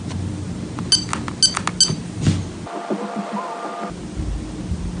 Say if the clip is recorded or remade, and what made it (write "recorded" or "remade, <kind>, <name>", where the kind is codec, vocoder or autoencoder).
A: recorded